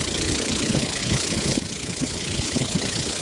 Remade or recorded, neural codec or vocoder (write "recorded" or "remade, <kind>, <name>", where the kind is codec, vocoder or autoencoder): remade, codec, HILCodec